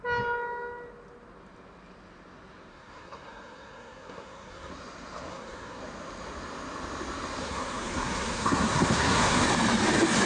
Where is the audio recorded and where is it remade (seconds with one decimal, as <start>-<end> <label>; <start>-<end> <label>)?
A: 0.0-2.7 recorded; 2.7-4.7 remade; 4.7-5.3 recorded; 5.3-5.8 remade; 5.8-7.4 recorded; 7.4-9.4 remade; 9.4-10.3 recorded